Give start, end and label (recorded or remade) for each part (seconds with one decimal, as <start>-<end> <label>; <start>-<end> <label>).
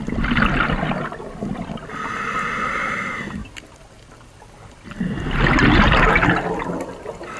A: 0.0-7.4 recorded